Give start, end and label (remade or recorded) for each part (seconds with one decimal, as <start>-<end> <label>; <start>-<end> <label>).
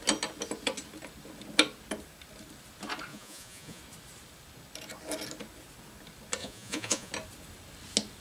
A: 0.0-3.1 recorded; 3.1-3.8 remade; 3.8-6.4 recorded; 6.4-7.1 remade; 7.1-8.2 recorded